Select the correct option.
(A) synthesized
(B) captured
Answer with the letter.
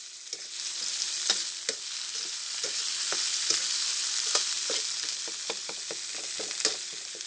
B